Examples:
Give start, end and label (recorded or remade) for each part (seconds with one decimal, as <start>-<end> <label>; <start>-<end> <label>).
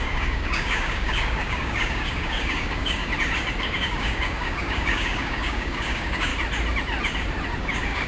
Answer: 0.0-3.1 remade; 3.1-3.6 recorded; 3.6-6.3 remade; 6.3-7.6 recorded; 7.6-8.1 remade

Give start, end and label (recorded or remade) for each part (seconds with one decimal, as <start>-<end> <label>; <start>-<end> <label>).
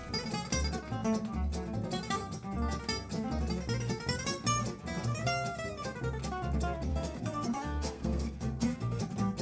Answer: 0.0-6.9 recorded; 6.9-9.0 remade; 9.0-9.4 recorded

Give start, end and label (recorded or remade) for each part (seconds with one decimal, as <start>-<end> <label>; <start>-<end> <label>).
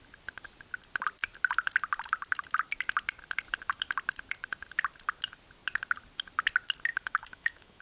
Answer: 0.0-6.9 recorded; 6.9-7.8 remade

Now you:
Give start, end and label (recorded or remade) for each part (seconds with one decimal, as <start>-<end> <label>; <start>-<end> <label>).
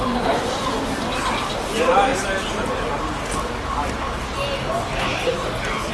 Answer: 0.0-5.9 recorded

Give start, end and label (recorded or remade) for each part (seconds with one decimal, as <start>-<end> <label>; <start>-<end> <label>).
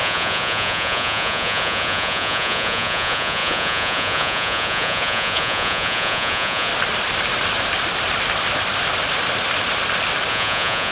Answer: 0.0-6.7 remade; 6.7-10.3 recorded; 10.3-10.9 remade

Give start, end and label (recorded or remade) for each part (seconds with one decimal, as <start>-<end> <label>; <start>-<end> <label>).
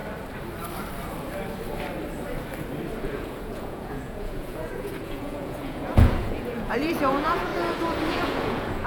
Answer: 0.0-3.0 recorded; 3.0-7.5 remade; 7.5-8.1 recorded; 8.1-8.9 remade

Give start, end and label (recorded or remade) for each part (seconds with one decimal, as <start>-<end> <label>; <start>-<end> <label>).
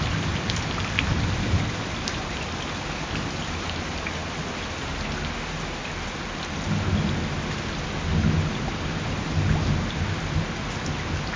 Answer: 0.0-11.4 recorded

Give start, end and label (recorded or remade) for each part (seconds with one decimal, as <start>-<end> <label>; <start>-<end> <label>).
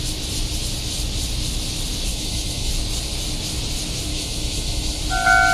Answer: 0.0-2.1 recorded; 2.1-2.7 remade; 2.7-4.1 recorded; 4.1-5.0 remade; 5.0-5.5 recorded